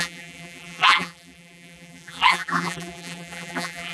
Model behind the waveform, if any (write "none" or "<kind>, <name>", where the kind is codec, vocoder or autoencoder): vocoder, BigVGAN v2